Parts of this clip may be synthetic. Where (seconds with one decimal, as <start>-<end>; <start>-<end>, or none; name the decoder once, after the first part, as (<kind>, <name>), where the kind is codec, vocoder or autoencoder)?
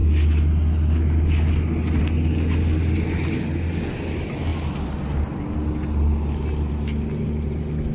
none